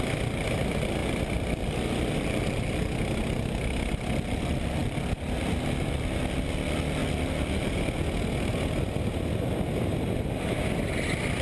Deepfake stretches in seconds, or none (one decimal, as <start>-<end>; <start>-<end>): none